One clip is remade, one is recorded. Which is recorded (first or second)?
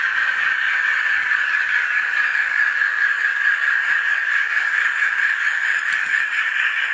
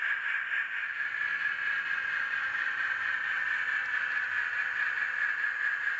second